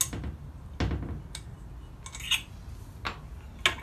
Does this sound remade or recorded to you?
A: recorded